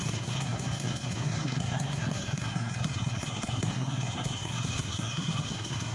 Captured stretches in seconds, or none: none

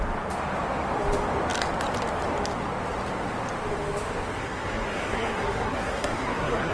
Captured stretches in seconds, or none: 0.0-4.4

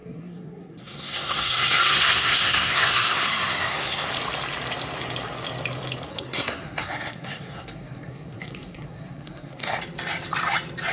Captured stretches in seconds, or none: 4.1-6.1; 9.8-10.9

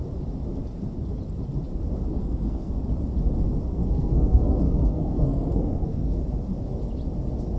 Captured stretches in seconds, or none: 0.0-2.2; 2.7-3.7; 6.2-7.6

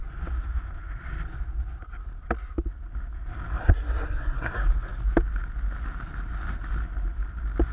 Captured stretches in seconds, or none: 0.0-3.6; 4.5-7.7

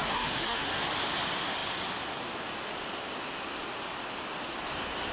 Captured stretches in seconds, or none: 0.8-5.1

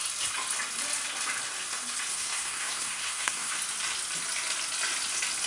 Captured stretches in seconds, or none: 0.0-2.1; 3.6-5.5